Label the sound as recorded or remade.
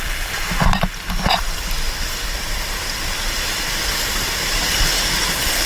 recorded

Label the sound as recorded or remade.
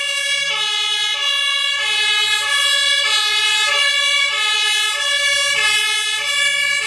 recorded